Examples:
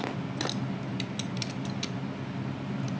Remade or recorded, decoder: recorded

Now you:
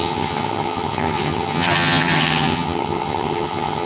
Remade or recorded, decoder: remade, vocoder, HiFi-GAN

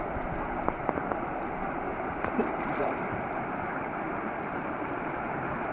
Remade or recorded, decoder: recorded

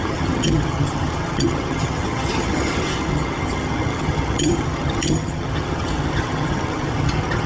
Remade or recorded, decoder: remade, vocoder, HiFi-GAN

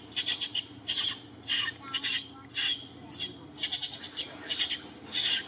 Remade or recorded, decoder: recorded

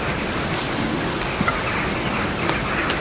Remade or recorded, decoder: recorded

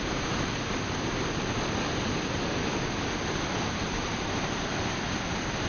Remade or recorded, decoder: recorded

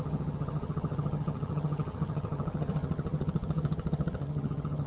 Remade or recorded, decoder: remade, vocoder, HiFi-GAN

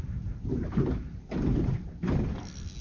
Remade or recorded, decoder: recorded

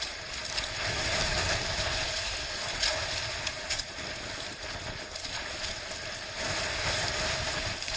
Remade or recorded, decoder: recorded